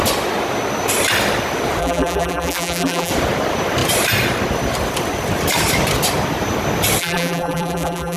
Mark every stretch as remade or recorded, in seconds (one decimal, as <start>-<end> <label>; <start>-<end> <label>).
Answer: 0.0-1.8 recorded; 1.8-3.1 remade; 3.1-7.0 recorded; 7.0-8.2 remade